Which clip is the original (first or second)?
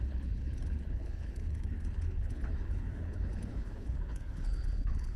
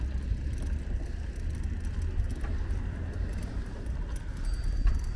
second